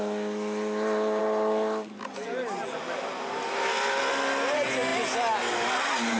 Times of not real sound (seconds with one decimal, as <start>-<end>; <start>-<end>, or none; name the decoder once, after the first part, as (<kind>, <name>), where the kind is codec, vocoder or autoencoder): none